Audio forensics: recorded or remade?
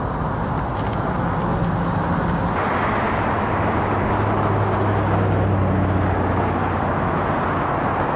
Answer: recorded